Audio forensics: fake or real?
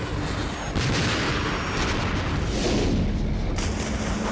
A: real